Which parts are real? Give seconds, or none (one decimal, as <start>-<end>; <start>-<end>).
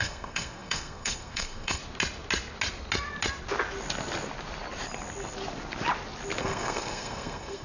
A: 1.8-6.4